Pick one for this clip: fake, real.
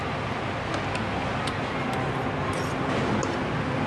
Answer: real